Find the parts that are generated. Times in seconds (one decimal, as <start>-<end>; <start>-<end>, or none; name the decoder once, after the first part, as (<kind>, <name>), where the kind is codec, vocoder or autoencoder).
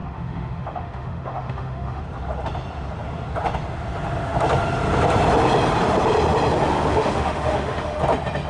0.0-2.0 (autoencoder, DAC-VAE); 6.9-8.0